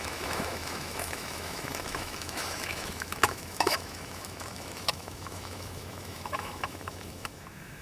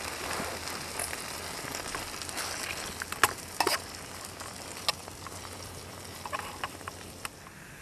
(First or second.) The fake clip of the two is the first